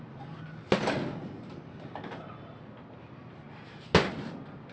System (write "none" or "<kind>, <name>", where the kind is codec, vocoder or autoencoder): none